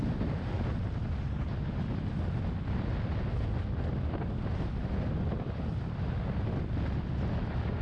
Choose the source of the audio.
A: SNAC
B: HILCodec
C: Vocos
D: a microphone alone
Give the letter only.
D